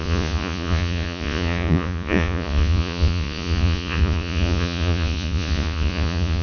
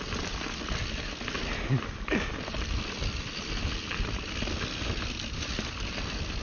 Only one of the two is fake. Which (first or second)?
first